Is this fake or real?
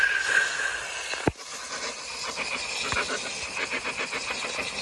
real